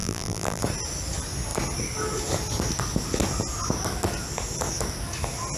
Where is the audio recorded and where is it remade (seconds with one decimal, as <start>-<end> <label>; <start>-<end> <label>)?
0.0-0.6 remade; 0.6-5.6 recorded